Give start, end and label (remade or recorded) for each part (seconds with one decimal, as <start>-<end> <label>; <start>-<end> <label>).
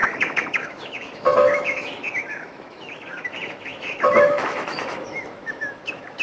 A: 0.0-6.2 remade